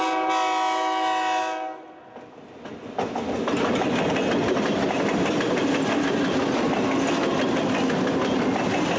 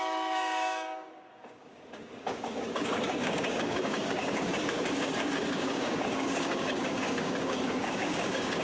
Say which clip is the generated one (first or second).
second